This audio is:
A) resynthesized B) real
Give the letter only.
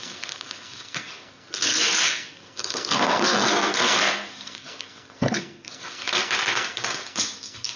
A